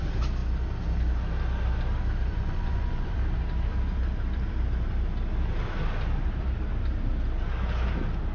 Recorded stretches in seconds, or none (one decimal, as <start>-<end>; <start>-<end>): 0.0-2.3; 3.1-8.3